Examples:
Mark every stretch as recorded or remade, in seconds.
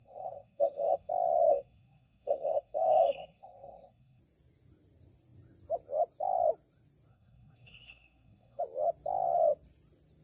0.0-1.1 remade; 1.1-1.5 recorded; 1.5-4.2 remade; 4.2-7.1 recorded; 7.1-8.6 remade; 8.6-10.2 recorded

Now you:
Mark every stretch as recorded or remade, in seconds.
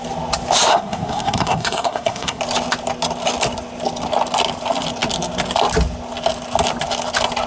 0.0-0.7 recorded; 0.7-2.4 remade; 2.4-7.5 recorded